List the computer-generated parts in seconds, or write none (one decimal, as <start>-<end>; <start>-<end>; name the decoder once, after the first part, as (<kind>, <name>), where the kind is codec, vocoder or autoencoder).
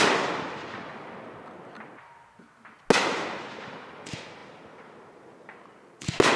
none